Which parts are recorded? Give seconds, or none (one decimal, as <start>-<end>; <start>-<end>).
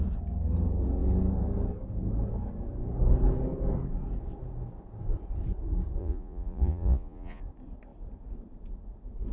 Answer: 0.0-6.0; 7.4-9.3